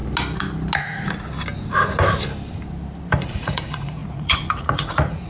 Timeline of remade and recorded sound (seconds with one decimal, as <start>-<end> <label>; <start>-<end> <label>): 0.0-3.1 recorded; 3.1-5.3 remade